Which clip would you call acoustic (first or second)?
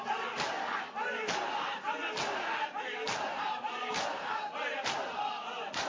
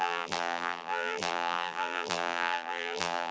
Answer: first